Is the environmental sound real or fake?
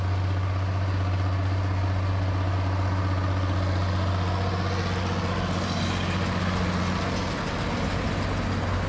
real